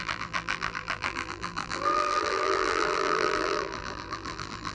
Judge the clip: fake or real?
fake